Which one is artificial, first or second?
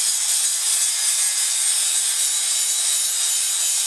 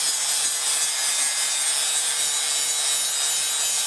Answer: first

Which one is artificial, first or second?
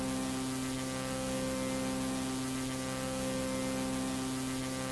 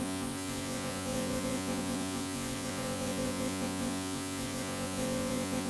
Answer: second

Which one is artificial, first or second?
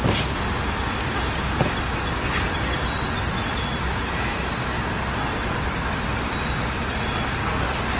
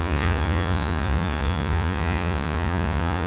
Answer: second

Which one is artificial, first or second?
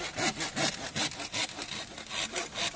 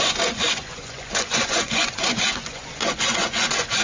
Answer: second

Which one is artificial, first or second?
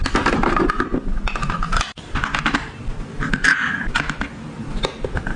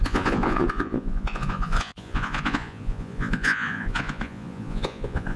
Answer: second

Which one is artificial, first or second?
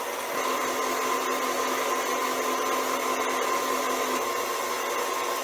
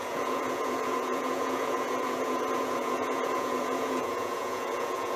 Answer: second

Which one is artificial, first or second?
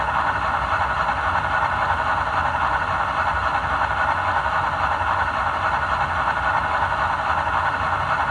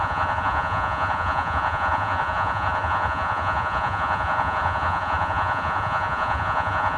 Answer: second